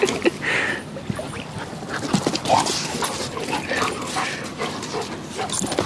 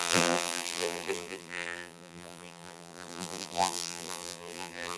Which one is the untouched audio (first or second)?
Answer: first